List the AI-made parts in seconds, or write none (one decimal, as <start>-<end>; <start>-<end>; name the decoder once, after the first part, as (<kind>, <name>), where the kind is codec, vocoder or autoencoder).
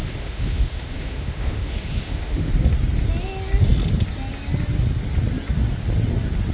0.0-2.5 (autoencoder, DAC-VAE)